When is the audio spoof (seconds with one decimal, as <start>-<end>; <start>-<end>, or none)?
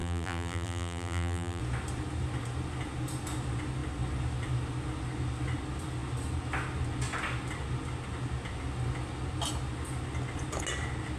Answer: 0.0-1.6